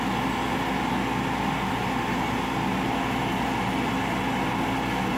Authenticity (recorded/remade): recorded